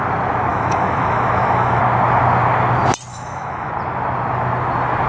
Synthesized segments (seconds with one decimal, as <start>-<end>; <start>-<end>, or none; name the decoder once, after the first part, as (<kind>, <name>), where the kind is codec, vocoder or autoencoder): 0.5-1.8 (autoencoder, DAC-VAE); 3.1-3.7